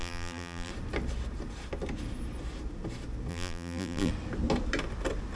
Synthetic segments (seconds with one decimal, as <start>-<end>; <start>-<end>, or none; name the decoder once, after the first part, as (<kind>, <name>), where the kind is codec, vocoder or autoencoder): 0.0-0.7 (vocoder, BigVGAN v2); 3.3-4.1